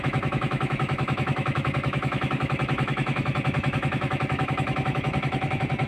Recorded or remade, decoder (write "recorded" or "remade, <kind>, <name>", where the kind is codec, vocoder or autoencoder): remade, autoencoder, DAC-VAE